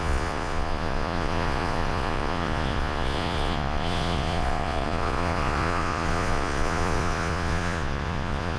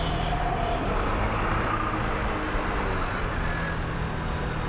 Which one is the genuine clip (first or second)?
second